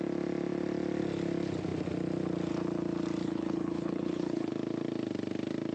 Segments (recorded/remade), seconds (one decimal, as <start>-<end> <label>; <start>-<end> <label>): 0.0-3.2 recorded; 3.2-4.5 remade; 4.5-5.7 recorded